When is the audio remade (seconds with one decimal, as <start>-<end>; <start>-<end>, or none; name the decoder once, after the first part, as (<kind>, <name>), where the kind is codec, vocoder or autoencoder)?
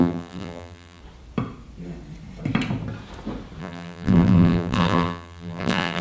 0.0-1.0 (vocoder, BigVGAN v2); 3.6-6.0